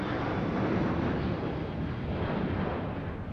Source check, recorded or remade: recorded